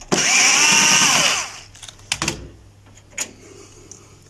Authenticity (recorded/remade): recorded